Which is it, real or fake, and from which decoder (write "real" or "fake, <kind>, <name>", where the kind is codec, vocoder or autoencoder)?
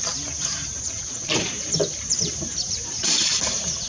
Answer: fake, vocoder, BigVGAN v2